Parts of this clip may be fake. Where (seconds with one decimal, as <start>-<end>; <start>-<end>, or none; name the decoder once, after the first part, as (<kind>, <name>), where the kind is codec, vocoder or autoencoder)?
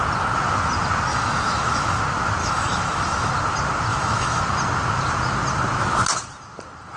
1.1-2.0 (autoencoder, DAC-VAE); 2.4-3.3; 3.9-4.4